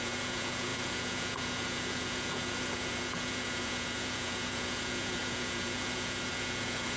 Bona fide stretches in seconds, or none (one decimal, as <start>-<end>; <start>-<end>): none